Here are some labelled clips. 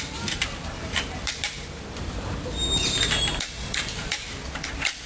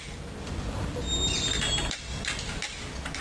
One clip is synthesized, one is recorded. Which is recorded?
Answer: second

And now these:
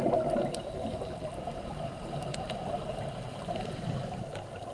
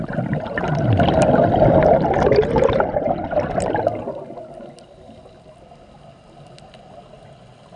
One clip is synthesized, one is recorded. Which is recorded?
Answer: second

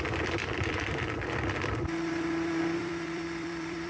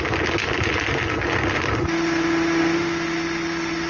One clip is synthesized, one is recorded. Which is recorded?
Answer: second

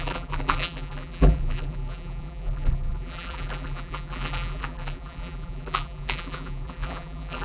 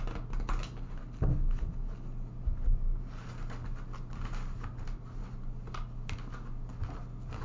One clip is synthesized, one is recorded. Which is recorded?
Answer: second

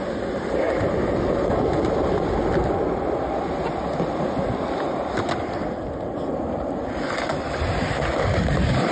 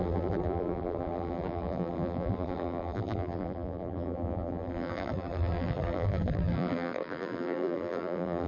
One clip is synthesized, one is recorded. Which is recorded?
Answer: first